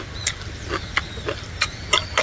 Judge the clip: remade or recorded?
remade